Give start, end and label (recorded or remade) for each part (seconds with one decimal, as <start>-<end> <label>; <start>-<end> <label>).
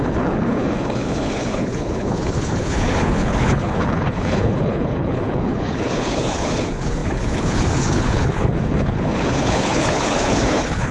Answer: 0.0-10.9 remade